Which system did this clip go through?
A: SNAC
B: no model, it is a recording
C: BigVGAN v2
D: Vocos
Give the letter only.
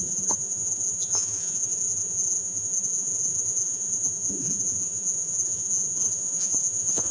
D